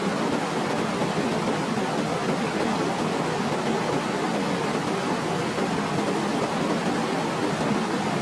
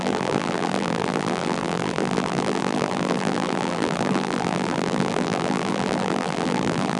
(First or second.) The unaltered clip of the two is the first